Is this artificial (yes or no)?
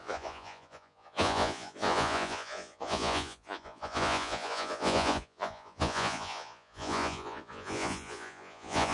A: yes